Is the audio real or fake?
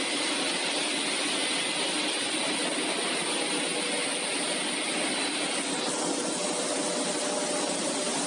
real